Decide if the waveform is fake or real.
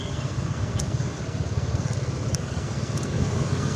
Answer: fake